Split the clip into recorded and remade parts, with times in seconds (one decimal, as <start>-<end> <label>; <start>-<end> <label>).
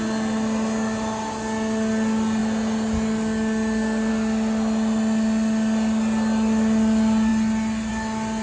0.0-8.4 recorded